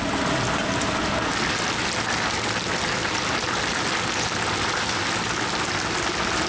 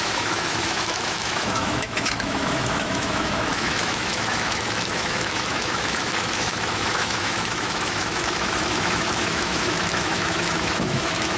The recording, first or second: first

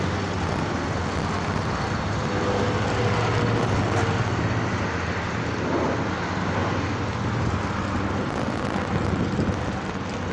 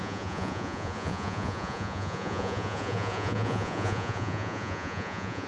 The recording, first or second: first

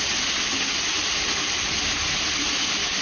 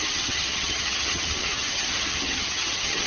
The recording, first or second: first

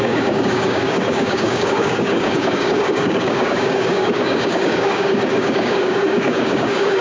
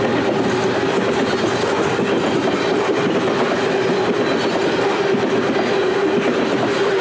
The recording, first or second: second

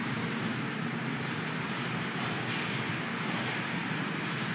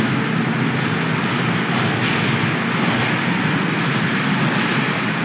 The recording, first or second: second